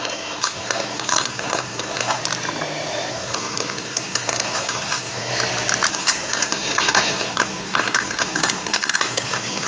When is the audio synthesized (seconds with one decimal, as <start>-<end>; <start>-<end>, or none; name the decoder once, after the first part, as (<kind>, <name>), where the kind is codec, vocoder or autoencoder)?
0.0-2.2 (codec, SNAC); 3.1-5.3; 5.9-9.7